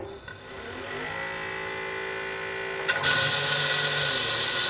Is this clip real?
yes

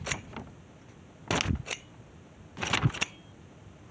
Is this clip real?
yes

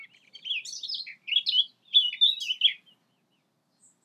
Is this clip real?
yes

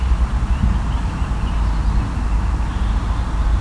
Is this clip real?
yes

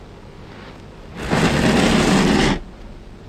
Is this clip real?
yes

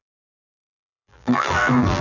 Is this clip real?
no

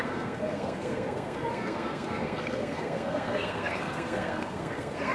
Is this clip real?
no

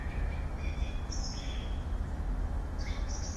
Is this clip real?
no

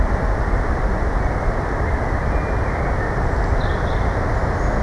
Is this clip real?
yes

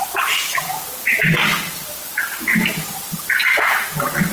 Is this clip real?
yes